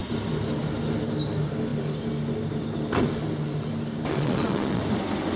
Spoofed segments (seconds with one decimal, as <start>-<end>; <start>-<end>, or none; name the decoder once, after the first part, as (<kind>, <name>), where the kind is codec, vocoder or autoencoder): 4.1-4.8 (vocoder, Vocos)